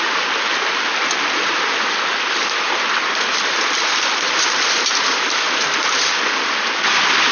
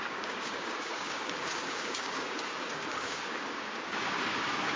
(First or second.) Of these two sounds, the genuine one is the first